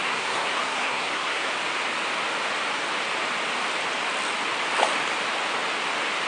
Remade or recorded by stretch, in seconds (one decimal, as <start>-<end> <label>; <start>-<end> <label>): 0.0-1.5 remade; 1.5-6.3 recorded